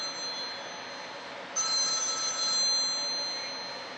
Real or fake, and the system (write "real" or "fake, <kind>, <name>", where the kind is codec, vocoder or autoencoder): real